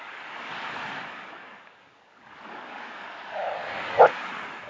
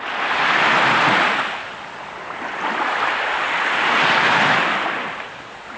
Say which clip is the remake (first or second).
first